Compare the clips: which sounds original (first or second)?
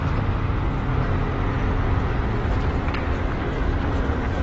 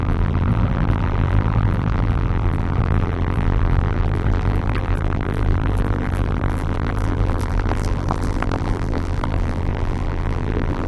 first